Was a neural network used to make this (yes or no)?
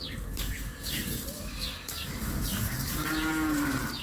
yes